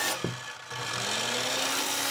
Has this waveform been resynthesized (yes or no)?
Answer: no